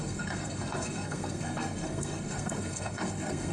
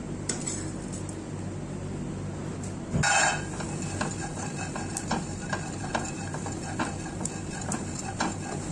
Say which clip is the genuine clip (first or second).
second